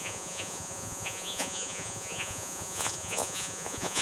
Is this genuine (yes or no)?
no